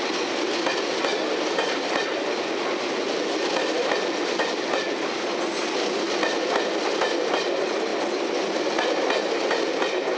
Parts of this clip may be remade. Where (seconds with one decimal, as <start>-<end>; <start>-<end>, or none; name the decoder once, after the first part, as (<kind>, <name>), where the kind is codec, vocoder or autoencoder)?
none